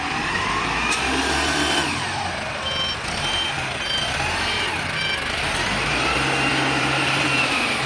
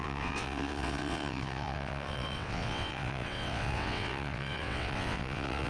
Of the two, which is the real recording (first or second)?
first